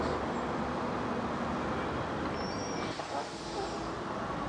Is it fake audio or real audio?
real